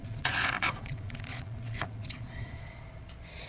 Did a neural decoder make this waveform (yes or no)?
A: yes